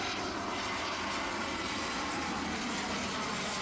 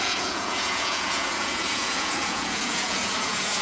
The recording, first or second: first